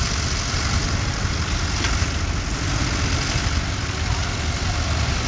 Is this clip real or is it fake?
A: real